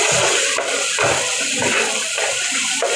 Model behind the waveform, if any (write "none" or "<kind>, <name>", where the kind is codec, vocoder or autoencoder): none